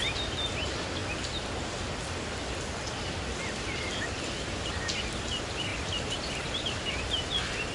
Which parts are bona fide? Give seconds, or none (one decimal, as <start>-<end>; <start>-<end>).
0.0-5.7; 6.9-7.7